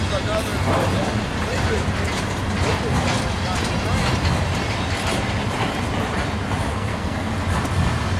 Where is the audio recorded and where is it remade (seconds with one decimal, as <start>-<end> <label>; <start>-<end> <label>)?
0.0-6.7 recorded; 6.7-7.3 remade; 7.3-8.2 recorded